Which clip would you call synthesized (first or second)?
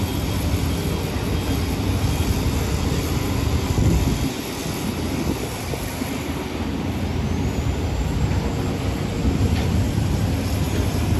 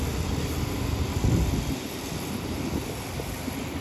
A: second